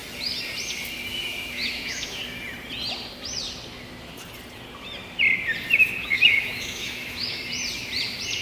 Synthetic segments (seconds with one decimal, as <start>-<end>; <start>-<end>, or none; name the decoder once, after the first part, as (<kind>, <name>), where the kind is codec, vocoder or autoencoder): 1.1-2.2 (autoencoder, DAC-VAE); 6.0-7.5